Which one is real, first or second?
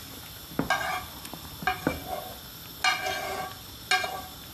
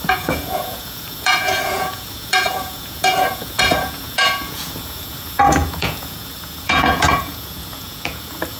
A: first